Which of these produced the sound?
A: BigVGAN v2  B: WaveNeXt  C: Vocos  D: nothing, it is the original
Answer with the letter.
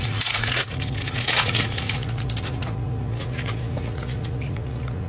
C